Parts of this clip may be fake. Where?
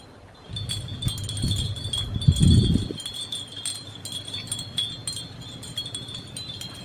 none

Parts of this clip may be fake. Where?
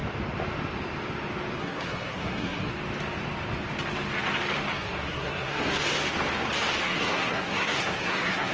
1.6-2.7; 4.7-5.8; 6.8-8.5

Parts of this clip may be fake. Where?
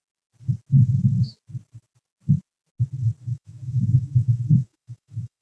3.2-5.4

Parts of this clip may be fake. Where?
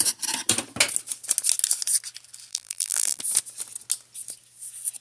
2.5-3.2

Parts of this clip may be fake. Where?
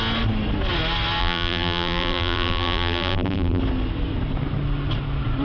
1.2-3.6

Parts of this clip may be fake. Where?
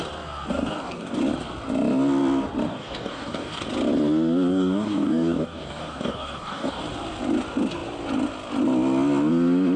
0.5-1.2; 2.7-3.6; 4.5-6.8